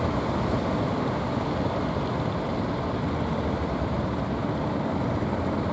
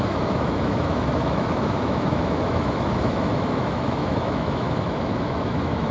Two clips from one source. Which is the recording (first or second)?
first